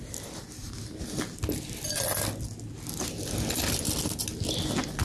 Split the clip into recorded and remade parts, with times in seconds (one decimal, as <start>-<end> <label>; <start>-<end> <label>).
0.0-5.0 recorded

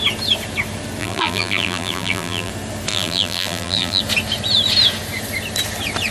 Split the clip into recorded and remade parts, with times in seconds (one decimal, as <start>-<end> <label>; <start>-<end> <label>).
0.0-1.0 recorded; 1.0-2.5 remade; 2.5-2.9 recorded; 2.9-4.0 remade; 4.0-6.1 recorded

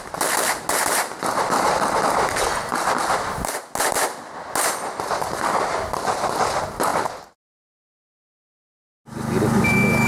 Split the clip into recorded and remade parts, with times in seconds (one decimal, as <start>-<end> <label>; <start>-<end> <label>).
0.0-10.1 recorded

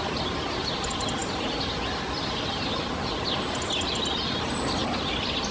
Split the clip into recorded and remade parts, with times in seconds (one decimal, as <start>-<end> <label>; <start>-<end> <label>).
0.0-5.5 recorded

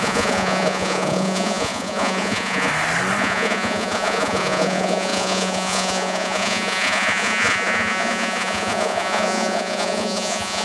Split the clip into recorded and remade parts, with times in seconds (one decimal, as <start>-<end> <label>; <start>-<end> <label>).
0.0-2.7 remade; 2.7-3.2 recorded; 3.2-10.6 remade

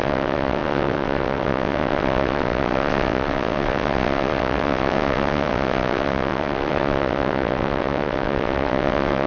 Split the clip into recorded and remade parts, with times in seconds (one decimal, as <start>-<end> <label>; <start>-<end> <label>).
0.0-9.3 remade

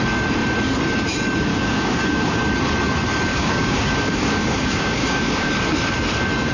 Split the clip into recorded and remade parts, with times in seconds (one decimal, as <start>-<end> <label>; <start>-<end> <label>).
0.0-1.5 recorded; 1.5-2.4 remade; 2.4-3.3 recorded; 3.3-5.5 remade; 5.5-6.5 recorded